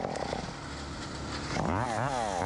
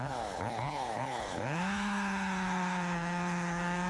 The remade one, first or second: second